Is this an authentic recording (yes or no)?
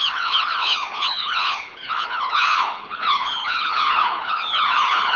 no